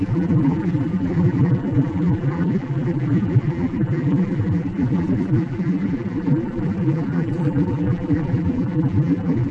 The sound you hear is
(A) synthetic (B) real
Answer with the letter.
A